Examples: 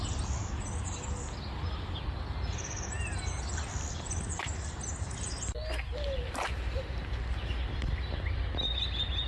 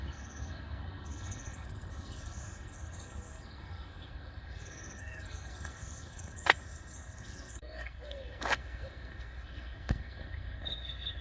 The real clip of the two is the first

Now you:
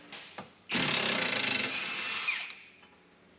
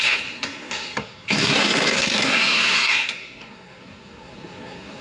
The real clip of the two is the first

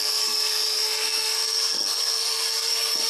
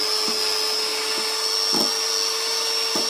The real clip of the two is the second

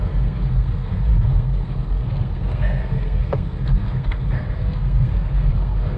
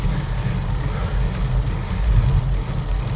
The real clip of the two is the second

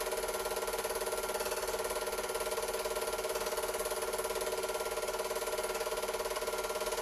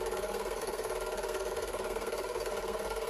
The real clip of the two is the first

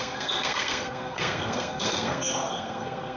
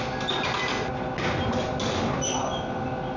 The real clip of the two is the second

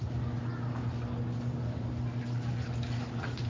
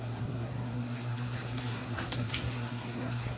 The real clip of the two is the first